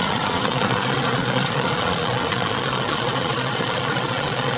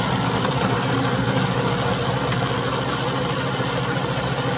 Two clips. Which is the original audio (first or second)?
second